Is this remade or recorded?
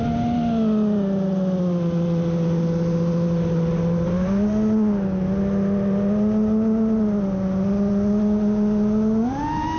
recorded